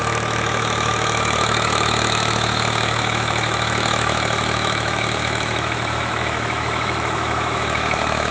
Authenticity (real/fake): fake